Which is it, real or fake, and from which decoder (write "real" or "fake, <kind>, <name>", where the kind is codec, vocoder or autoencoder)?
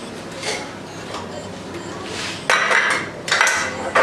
real